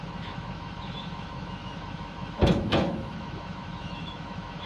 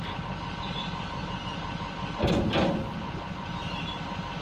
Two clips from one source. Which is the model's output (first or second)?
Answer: first